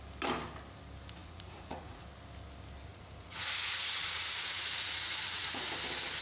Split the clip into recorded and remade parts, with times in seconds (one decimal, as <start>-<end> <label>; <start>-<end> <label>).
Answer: 0.0-1.2 recorded; 1.2-2.0 remade; 2.0-2.9 recorded; 2.9-5.7 remade; 5.7-6.2 recorded